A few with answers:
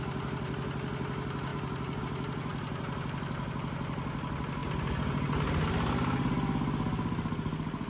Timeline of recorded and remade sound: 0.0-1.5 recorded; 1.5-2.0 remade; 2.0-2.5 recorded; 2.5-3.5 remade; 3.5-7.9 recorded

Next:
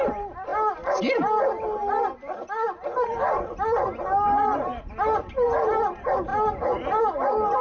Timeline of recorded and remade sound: 0.0-7.6 recorded

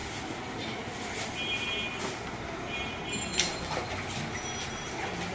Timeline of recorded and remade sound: 0.0-5.3 recorded